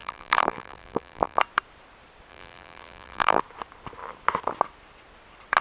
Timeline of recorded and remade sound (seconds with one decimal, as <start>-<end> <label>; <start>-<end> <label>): 0.0-1.4 remade; 1.4-2.3 recorded; 2.3-3.4 remade; 3.4-5.6 recorded